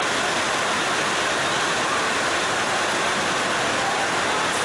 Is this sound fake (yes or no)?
no